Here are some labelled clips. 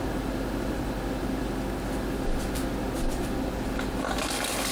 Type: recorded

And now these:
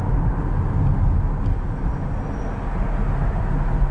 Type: recorded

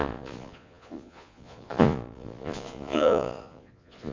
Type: remade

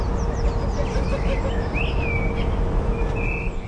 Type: recorded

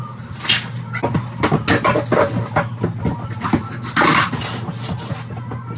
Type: recorded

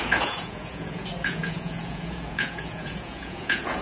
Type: remade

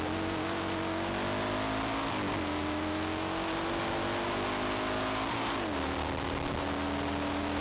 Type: recorded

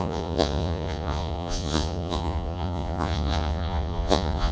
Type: remade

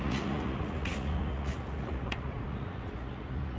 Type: remade